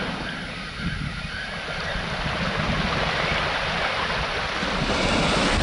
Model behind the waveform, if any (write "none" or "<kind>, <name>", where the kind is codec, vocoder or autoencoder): none